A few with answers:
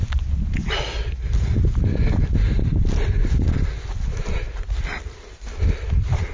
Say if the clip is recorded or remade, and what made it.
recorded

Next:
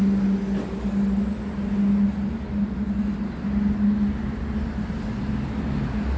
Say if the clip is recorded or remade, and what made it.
recorded